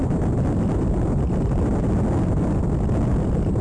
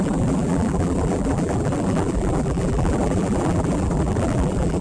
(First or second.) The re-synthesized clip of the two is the second